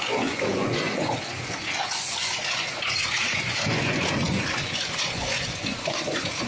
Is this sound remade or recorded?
remade